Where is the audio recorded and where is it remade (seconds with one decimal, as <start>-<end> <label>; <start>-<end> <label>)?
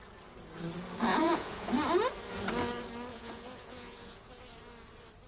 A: 0.0-1.1 recorded; 1.1-1.7 remade; 1.7-3.1 recorded; 3.1-4.3 remade; 4.3-5.3 recorded